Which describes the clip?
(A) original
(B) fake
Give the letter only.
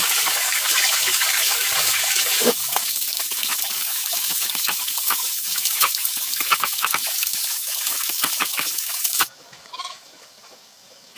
B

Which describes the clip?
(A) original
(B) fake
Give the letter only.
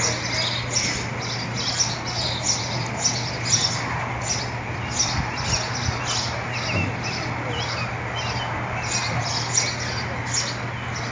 A